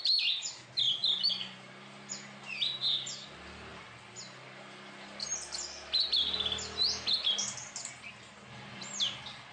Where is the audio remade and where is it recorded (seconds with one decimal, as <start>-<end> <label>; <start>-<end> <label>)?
0.0-9.5 recorded